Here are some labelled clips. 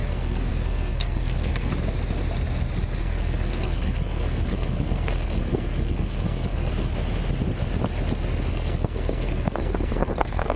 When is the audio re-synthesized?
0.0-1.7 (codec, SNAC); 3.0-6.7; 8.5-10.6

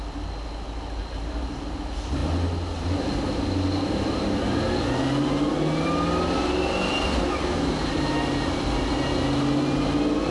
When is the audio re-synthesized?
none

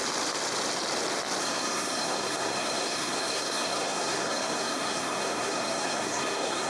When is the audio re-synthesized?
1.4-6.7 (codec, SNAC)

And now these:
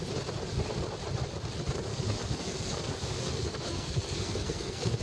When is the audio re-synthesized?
1.9-5.0 (codec, SNAC)

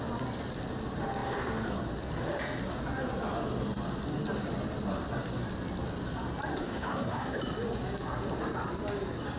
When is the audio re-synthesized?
6.5-7.4 (codec, SNAC)

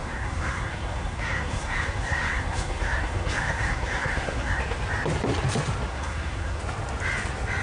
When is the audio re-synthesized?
0.0-4.6 (codec, SNAC); 5.9-6.6

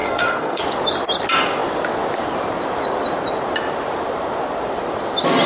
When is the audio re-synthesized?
0.0-0.6 (codec, SNAC)